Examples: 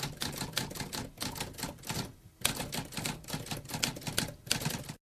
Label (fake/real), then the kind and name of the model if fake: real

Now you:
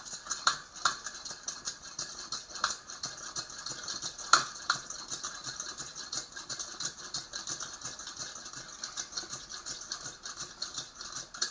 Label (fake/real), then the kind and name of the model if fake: fake, vocoder, BigVGAN v2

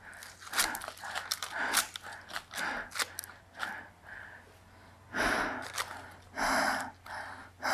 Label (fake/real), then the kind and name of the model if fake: real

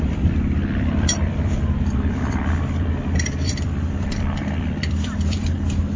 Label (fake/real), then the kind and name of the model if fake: fake, vocoder, BigVGAN v2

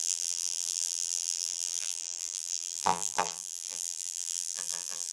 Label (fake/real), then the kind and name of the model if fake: fake, vocoder, BigVGAN v2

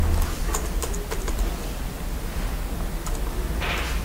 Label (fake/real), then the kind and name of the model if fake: real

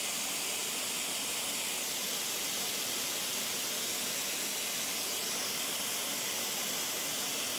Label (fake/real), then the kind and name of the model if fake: real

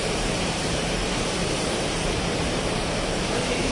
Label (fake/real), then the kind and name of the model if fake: fake, vocoder, BigVGAN v2